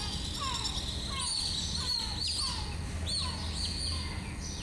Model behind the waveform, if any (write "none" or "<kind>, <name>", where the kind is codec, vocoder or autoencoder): none